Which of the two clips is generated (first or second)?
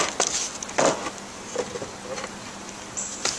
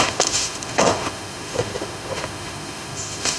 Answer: second